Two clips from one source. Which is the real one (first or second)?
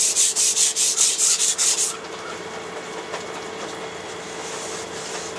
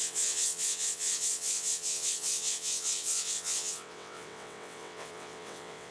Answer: first